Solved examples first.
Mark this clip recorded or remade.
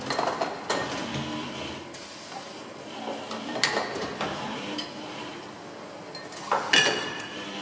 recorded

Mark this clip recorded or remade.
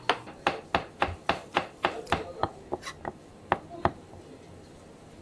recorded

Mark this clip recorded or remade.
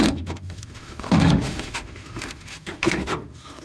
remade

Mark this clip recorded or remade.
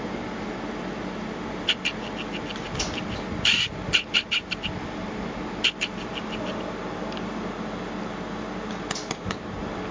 recorded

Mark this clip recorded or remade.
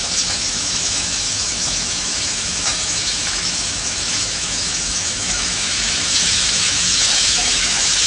remade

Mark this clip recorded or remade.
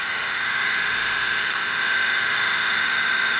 remade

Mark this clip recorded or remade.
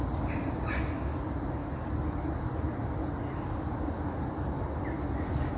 recorded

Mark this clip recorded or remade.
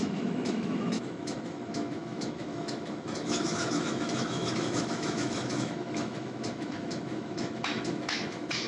remade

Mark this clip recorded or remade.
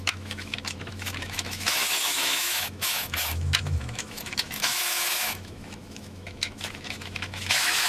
remade